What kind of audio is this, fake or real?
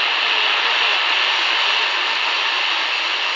real